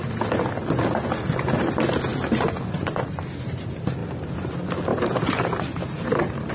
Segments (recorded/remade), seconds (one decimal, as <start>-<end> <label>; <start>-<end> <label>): 0.0-4.0 recorded; 4.0-4.5 remade; 4.5-4.9 recorded; 4.9-6.5 remade